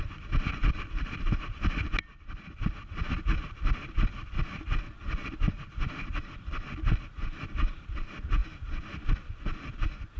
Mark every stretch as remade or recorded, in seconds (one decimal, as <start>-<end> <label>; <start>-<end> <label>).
0.0-10.2 recorded